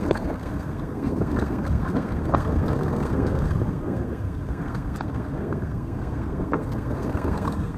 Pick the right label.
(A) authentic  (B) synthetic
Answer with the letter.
B